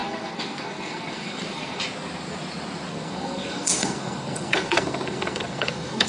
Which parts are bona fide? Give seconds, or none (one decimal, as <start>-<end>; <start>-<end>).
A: 1.8-2.9